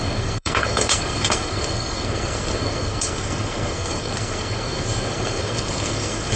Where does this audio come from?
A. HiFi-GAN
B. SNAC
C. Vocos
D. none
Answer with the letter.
B